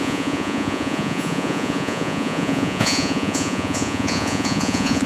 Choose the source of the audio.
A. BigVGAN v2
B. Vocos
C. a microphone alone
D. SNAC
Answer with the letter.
B